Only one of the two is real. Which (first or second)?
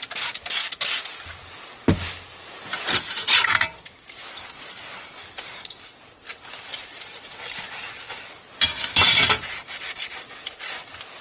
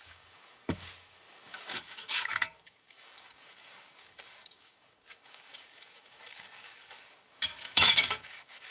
first